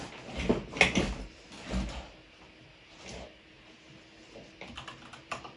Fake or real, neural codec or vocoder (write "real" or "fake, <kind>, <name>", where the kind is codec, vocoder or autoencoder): real